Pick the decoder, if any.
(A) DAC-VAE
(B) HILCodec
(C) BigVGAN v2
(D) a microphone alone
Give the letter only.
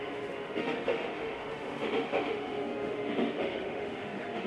A